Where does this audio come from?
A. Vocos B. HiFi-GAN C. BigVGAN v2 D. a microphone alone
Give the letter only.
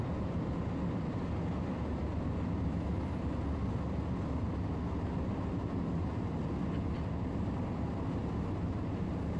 D